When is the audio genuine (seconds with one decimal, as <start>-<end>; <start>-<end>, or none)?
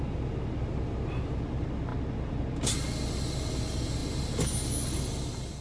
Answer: 0.0-5.6